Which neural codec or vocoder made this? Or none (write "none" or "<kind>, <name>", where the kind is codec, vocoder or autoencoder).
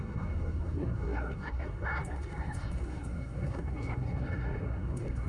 codec, SNAC